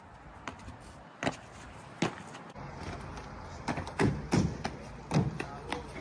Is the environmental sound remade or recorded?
recorded